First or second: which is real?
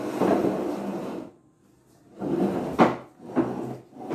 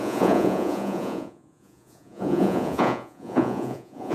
first